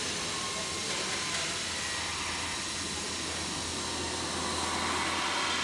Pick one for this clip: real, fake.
real